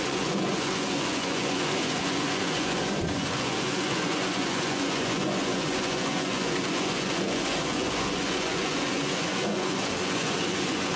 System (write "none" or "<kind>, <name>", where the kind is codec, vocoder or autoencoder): vocoder, Vocos